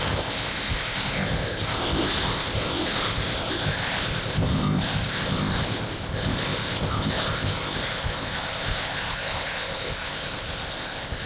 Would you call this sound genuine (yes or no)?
no